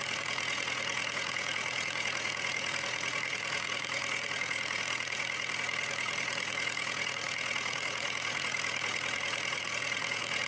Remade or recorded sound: remade